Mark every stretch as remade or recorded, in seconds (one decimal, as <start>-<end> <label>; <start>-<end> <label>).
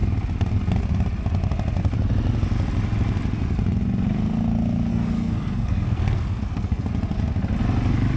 0.0-4.9 recorded; 4.9-6.8 remade; 6.8-8.2 recorded